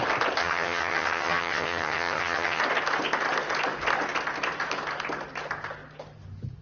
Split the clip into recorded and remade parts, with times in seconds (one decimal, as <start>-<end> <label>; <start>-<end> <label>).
0.0-0.4 recorded; 0.4-2.6 remade; 2.6-6.6 recorded